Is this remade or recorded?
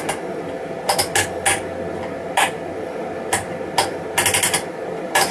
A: recorded